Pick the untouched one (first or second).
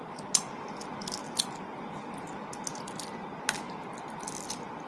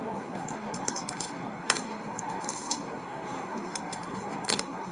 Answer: first